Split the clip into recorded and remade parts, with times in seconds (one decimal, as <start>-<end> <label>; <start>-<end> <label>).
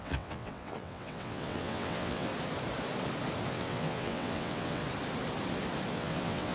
0.0-2.3 remade; 2.3-3.5 recorded; 3.5-4.8 remade; 4.8-5.9 recorded; 5.9-6.5 remade